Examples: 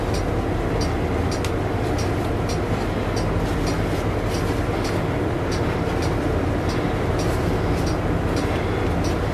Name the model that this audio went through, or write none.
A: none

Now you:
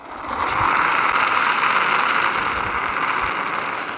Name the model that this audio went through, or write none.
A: none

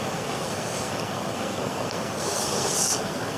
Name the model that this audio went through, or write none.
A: codec, SNAC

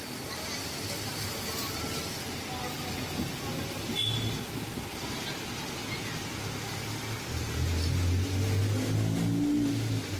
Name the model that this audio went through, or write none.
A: none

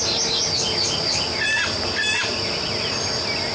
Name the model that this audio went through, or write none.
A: none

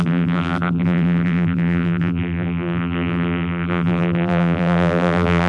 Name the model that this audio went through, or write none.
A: vocoder, BigVGAN v2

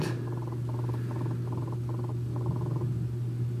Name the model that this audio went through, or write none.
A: none